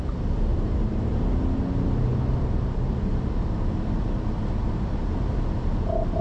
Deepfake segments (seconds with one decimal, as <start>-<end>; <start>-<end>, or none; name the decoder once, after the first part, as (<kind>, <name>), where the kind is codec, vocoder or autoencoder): 0.5-1.3 (vocoder, BigVGAN v2)